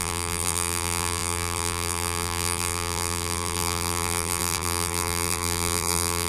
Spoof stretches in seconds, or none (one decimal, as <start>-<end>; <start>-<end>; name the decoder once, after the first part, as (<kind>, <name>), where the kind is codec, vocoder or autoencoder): 0.0-6.3 (vocoder, BigVGAN v2)